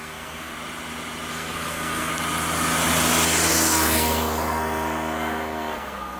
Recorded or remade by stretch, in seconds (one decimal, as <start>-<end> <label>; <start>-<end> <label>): 0.0-0.5 remade; 0.5-1.3 recorded; 1.3-2.1 remade; 2.1-3.5 recorded; 3.5-6.2 remade